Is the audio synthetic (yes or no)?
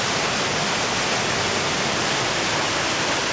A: no